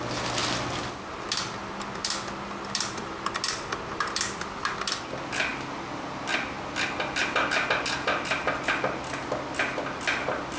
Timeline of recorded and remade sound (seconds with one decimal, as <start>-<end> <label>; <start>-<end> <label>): 0.0-10.6 recorded